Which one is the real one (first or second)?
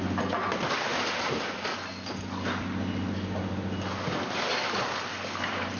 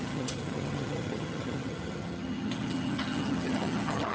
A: first